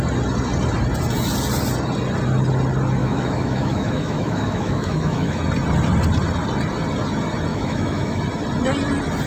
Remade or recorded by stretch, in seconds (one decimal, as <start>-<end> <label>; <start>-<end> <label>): 0.0-3.0 recorded; 3.0-5.4 remade; 5.4-7.5 recorded; 7.5-8.2 remade; 8.2-9.3 recorded